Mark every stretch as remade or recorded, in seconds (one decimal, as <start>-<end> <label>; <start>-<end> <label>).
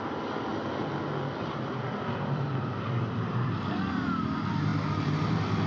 0.0-0.5 recorded; 0.5-3.9 remade; 3.9-4.7 recorded; 4.7-5.3 remade; 5.3-5.7 recorded